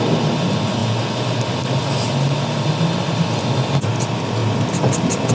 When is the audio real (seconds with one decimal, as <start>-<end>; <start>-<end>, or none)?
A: 0.0-5.3